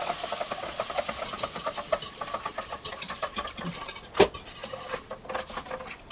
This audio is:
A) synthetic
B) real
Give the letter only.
B